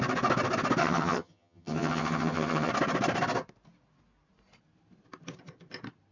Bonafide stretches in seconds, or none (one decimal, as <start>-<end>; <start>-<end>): 0.0-0.8; 2.7-6.1